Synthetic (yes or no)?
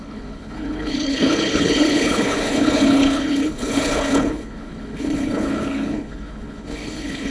yes